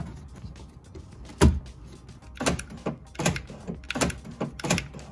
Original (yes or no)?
yes